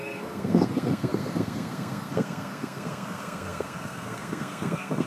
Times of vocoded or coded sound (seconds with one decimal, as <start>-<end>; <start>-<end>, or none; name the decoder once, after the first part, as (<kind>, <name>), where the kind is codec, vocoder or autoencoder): 0.0-5.1 (codec, SNAC)